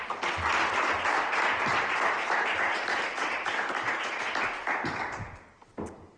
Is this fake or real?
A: real